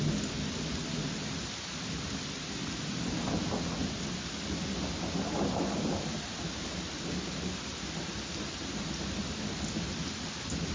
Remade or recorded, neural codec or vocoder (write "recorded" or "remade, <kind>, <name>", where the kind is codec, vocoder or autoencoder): recorded